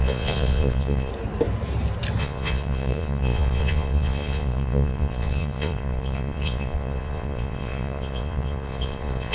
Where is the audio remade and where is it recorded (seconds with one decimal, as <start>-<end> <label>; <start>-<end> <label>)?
0.0-1.1 remade; 1.1-2.2 recorded; 2.2-9.3 remade